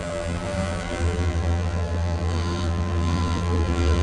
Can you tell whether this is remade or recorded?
remade